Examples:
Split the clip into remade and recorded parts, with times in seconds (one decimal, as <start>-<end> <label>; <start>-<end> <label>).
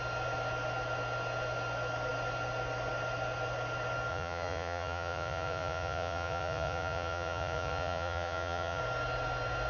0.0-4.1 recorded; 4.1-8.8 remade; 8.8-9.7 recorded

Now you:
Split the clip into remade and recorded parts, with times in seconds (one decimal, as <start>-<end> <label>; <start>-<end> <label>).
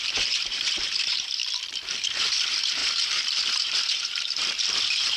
0.0-1.4 remade; 1.4-2.0 recorded; 2.0-5.2 remade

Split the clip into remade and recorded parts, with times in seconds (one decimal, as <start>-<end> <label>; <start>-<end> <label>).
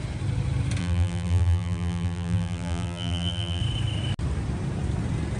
0.0-0.8 recorded; 0.8-3.6 remade; 3.6-5.4 recorded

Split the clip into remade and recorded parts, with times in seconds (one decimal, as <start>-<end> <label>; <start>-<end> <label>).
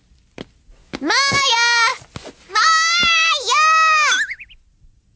0.0-0.8 recorded; 0.8-1.5 remade; 1.5-5.2 recorded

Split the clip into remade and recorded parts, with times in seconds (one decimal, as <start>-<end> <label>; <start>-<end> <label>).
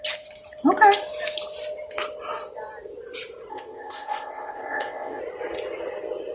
0.0-3.5 recorded; 3.5-5.2 remade; 5.2-6.3 recorded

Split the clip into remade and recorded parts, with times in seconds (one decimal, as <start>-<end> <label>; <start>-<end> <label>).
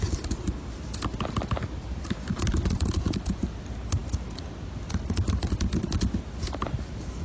0.0-4.0 recorded; 4.0-4.6 remade; 4.6-7.2 recorded